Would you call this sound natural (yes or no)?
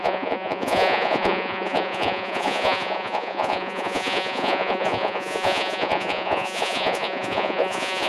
no